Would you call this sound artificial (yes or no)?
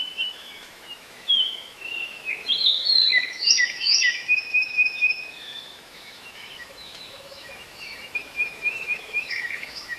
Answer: yes